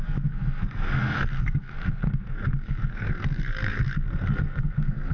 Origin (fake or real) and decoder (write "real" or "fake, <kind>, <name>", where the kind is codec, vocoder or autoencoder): fake, codec, SNAC